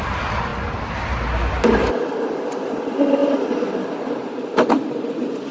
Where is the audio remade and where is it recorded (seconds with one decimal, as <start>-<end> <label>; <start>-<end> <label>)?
0.0-5.5 recorded